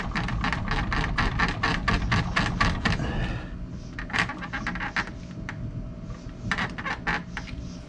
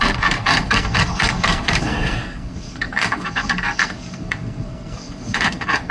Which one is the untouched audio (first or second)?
first